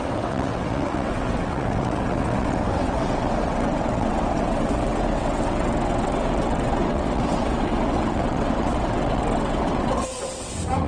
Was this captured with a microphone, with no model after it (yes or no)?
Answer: no